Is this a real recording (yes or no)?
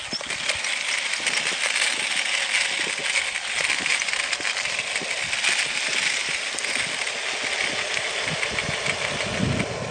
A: yes